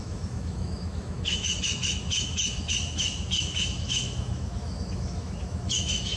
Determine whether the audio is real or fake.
fake